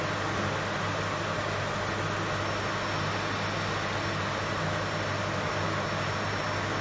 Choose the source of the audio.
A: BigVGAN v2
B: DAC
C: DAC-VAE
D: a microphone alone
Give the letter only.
D